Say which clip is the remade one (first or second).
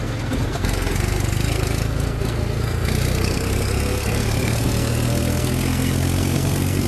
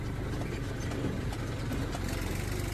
first